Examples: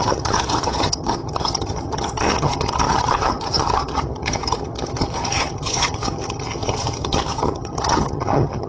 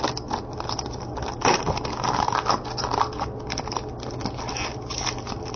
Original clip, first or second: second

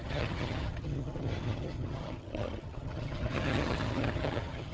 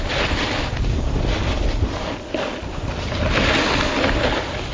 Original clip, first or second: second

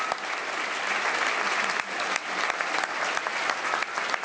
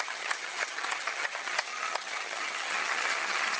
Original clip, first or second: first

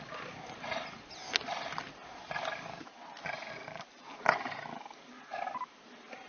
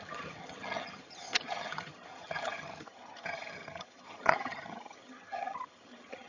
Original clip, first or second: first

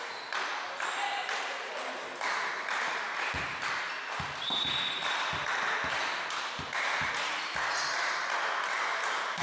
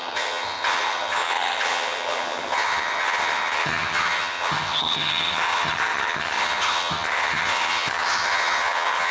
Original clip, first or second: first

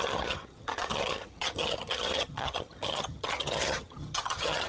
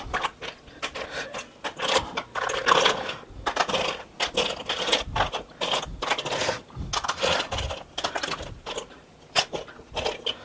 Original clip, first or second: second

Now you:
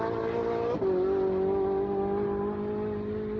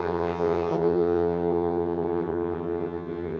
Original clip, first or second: first